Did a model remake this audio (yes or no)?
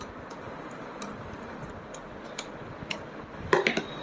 no